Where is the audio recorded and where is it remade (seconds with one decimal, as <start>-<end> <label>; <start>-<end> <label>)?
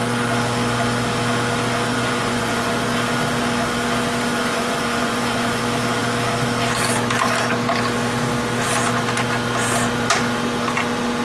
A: 0.0-1.9 recorded; 1.9-2.7 remade; 2.7-4.4 recorded; 4.4-5.6 remade; 5.6-11.2 recorded